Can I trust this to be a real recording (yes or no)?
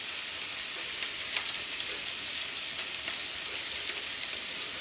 yes